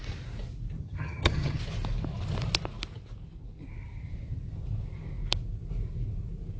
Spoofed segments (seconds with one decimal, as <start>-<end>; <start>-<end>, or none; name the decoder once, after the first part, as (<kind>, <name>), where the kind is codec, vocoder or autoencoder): 0.8-1.6 (vocoder, HiFi-GAN)